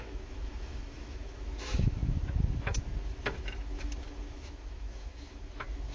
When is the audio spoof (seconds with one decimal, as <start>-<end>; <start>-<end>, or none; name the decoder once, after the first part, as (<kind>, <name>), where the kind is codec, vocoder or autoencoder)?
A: 0.0-5.9 (autoencoder, DAC-VAE)